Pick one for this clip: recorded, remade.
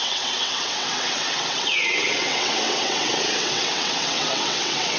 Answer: remade